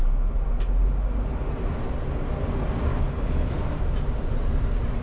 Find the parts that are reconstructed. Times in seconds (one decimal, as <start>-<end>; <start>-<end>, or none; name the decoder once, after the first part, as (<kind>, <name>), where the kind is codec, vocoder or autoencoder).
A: 2.9-3.5 (codec, HILCodec)